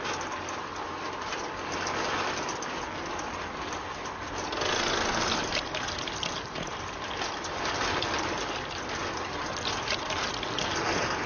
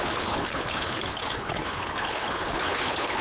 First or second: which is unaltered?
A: first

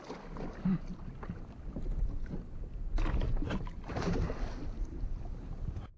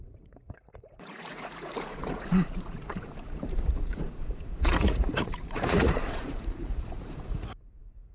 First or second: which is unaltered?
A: first